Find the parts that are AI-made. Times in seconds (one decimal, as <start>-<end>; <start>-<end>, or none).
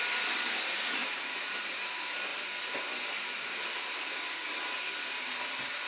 none